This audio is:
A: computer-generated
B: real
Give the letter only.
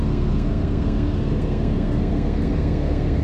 A